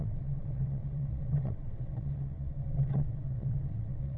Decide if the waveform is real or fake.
fake